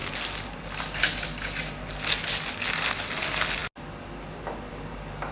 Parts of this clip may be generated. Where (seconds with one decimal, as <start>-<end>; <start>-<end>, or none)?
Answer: none